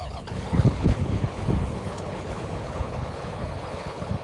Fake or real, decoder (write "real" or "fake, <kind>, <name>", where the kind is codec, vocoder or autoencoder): fake, codec, HILCodec